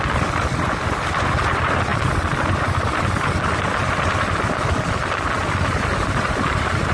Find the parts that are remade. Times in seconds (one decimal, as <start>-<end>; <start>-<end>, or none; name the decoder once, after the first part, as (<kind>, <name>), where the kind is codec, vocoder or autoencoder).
none